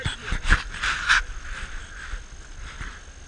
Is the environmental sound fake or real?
real